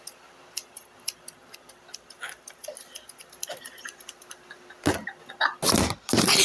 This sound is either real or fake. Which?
real